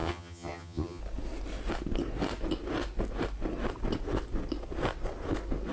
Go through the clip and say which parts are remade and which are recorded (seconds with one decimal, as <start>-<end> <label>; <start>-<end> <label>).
0.0-1.0 remade; 1.0-5.7 recorded